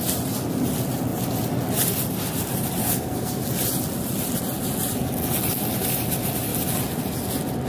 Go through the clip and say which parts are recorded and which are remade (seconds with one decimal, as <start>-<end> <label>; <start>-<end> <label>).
0.0-2.8 recorded; 2.8-3.4 remade; 3.4-7.7 recorded